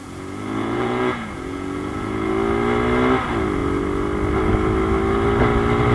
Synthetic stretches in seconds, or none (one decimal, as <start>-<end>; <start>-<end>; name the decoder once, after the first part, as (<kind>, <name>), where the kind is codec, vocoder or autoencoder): 0.0-2.3 (vocoder, Vocos)